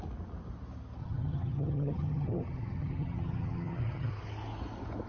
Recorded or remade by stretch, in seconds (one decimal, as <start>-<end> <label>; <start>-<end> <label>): 0.0-1.0 recorded; 1.0-4.1 remade; 4.1-5.1 recorded